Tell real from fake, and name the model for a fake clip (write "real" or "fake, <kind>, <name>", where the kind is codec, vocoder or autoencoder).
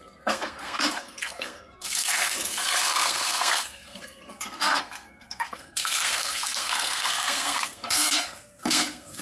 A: fake, codec, SNAC